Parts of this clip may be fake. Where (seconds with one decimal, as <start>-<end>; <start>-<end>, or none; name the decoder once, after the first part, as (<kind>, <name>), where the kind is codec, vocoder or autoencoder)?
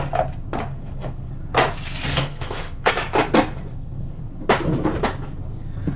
0.7-1.3 (codec, SNAC); 2.1-2.9; 3.7-4.2